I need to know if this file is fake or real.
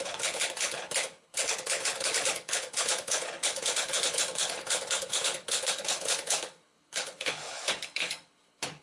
fake